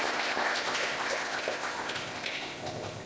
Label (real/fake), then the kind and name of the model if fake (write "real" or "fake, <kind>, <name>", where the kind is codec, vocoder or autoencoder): fake, codec, ZipCodec